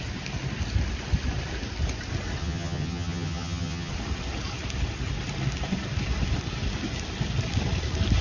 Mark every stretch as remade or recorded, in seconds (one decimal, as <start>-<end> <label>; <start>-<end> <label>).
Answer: 0.0-2.4 recorded; 2.4-3.9 remade; 3.9-8.2 recorded